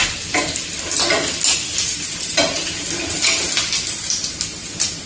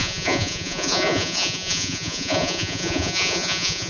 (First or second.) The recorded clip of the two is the first